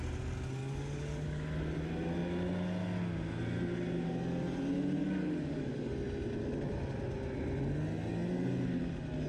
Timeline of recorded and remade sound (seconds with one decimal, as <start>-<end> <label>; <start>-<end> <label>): 0.0-0.6 recorded; 0.6-1.5 remade; 1.5-5.0 recorded; 5.0-5.9 remade; 5.9-9.3 recorded